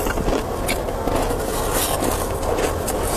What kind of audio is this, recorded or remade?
recorded